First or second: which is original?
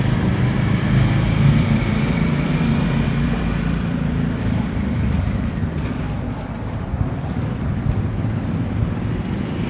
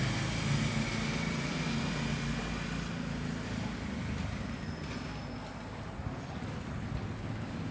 second